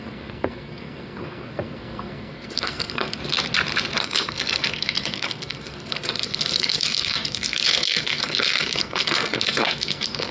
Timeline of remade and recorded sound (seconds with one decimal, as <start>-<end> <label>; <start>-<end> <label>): 0.0-3.2 remade; 3.2-4.0 recorded; 4.0-10.3 remade